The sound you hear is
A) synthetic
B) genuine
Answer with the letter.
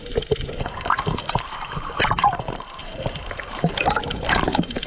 A